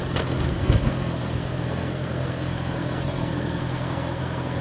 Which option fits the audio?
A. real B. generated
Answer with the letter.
B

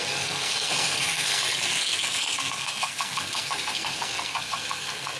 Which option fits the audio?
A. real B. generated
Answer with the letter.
B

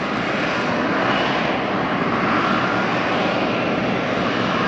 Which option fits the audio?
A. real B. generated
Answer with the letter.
A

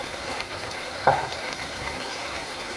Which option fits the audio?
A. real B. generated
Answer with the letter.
B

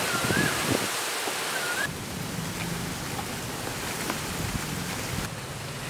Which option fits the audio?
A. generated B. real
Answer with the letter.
B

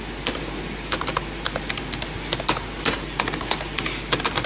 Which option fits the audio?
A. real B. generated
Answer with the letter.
A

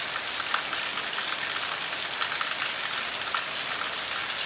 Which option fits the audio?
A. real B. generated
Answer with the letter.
A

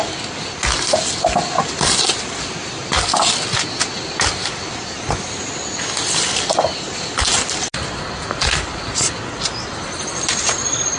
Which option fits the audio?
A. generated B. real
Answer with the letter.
B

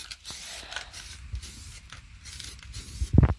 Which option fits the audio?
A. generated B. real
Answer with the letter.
B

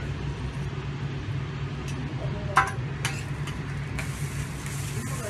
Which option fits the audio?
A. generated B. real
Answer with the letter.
B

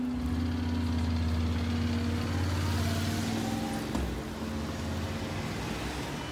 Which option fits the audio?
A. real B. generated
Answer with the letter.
A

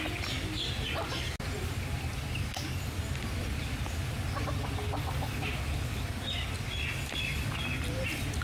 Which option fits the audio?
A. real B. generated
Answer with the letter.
A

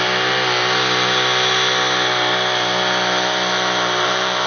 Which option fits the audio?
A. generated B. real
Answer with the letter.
B